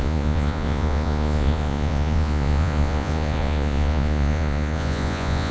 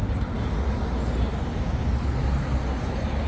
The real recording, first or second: second